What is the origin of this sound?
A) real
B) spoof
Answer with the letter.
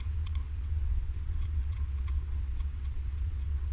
B